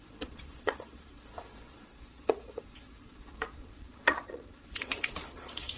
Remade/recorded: remade